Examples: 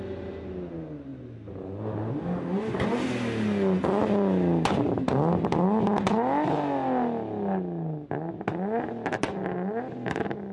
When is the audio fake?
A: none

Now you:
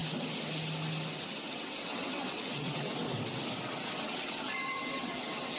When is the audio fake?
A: 1.5-3.0 (vocoder, WaveNeXt); 3.6-5.6

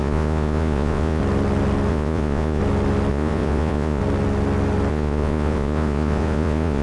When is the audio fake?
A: 0.0-1.2 (vocoder, Vocos); 1.9-2.6; 3.1-4.0; 4.9-6.8

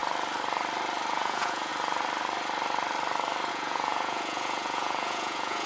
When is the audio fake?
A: 1.1-1.7 (vocoder, Vocos); 3.5-5.7

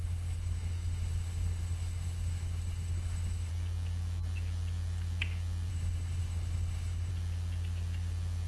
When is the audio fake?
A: 0.0-3.5 (codec, HILCodec); 5.7-7.1